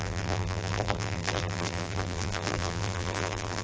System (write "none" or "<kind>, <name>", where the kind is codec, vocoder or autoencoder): vocoder, BigVGAN v2